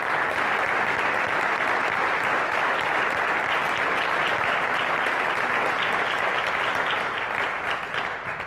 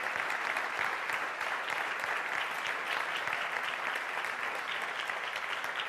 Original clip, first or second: first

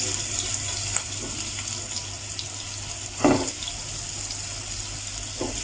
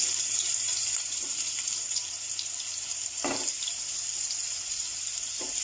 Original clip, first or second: first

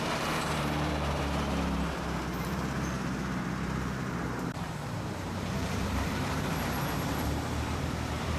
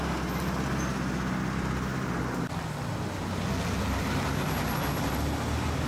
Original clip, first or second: second